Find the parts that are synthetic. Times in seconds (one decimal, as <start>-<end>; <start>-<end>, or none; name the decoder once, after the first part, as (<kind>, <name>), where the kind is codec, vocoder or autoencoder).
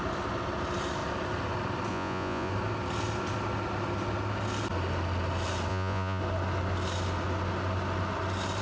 1.9-2.5 (vocoder, Vocos); 5.7-6.2